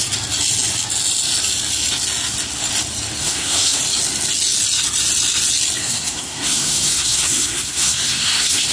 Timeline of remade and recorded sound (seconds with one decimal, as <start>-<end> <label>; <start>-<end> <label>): 0.0-3.2 recorded; 3.2-3.8 remade; 3.8-5.8 recorded; 5.8-8.7 remade